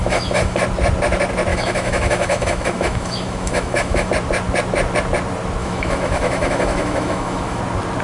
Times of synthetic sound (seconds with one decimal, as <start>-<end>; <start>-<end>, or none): 0.0-0.6; 1.5-4.1; 5.6-7.6